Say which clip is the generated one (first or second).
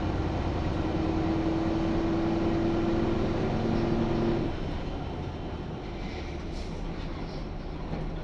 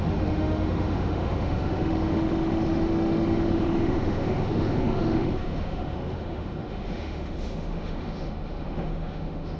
second